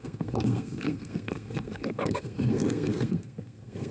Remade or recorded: remade